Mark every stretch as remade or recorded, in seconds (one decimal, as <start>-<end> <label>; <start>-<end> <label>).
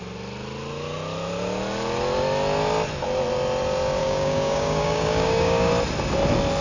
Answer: 0.0-4.0 recorded; 4.0-5.7 remade; 5.7-6.6 recorded